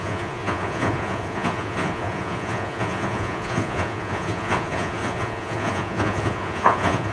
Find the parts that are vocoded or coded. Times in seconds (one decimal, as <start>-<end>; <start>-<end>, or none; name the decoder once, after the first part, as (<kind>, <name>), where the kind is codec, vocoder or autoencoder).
0.0-7.1 (vocoder, Vocos)